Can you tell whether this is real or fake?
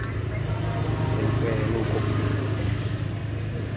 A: real